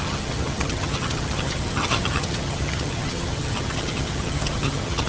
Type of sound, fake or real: fake